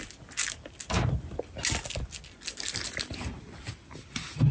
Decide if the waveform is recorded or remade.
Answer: recorded